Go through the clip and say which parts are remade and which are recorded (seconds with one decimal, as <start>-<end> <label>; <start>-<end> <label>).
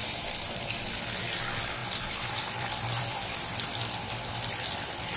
0.0-0.8 remade; 0.8-1.8 recorded; 1.8-5.2 remade